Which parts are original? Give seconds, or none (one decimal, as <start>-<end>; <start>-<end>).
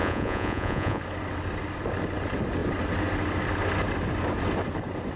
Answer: 1.0-5.2